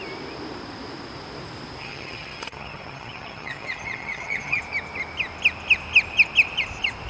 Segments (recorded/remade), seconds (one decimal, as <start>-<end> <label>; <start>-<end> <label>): 0.0-1.8 recorded; 1.8-4.6 remade; 4.6-7.1 recorded